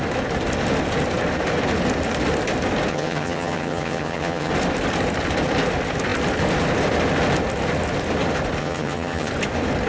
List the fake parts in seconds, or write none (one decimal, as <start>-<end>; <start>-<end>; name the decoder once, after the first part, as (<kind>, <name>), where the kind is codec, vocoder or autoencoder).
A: 2.9-4.5 (vocoder, HiFi-GAN); 8.6-9.3